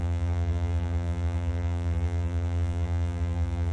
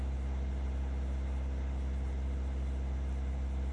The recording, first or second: second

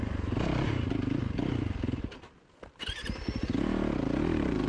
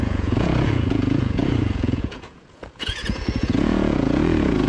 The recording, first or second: first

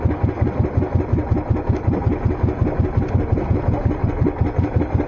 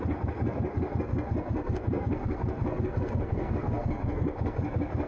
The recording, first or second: first